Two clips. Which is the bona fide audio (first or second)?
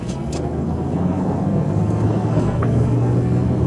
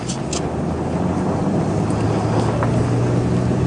second